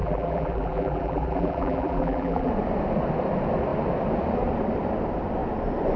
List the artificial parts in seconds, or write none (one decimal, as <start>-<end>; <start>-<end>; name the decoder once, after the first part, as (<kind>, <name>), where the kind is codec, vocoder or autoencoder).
0.0-2.5 (vocoder, BigVGAN v2)